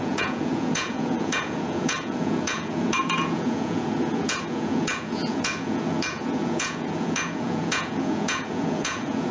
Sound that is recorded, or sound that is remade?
remade